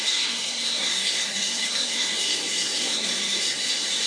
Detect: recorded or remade remade